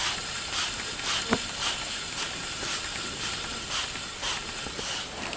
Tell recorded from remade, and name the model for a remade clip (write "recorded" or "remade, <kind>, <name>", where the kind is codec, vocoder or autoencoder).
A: recorded